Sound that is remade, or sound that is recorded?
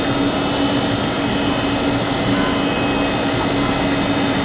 recorded